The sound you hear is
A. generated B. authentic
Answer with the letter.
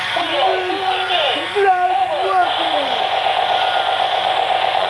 A